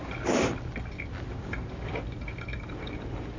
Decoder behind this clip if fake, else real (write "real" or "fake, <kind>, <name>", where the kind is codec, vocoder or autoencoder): fake, vocoder, BigVGAN v2